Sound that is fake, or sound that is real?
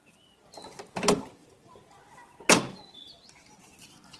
real